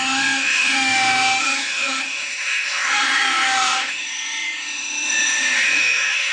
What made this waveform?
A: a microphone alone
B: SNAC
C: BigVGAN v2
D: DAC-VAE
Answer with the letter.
D